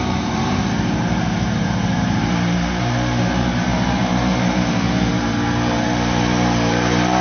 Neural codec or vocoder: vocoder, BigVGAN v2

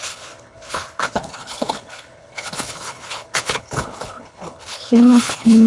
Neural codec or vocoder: codec, HILCodec